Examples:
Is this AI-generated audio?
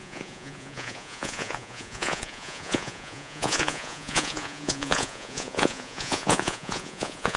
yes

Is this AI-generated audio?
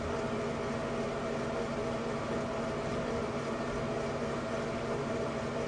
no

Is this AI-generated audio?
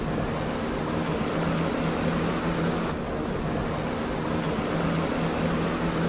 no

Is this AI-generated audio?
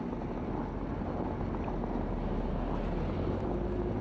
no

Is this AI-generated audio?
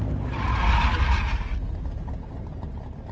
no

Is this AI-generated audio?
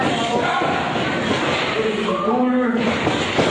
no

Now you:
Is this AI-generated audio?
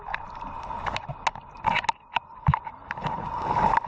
no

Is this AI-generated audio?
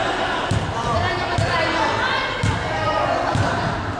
no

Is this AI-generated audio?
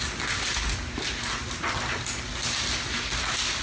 no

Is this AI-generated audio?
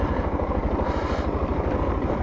no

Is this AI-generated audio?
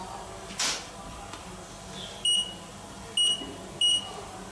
no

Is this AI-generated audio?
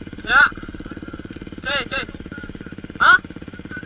yes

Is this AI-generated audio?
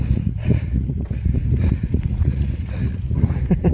yes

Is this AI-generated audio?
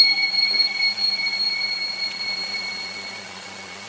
yes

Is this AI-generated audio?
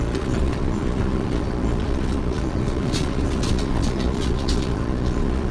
yes